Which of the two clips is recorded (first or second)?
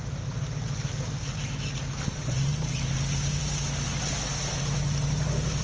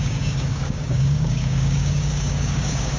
first